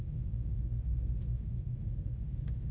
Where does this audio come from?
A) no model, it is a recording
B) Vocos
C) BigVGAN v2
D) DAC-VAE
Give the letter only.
D